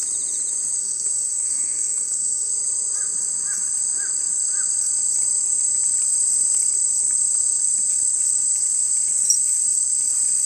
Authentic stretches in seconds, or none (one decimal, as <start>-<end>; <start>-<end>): 0.0-0.8; 2.5-10.5